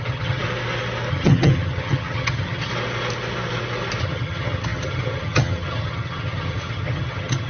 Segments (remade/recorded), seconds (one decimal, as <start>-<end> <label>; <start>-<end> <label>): 0.0-0.4 remade; 0.4-1.1 recorded; 1.1-2.7 remade; 2.7-4.0 recorded; 4.0-7.5 remade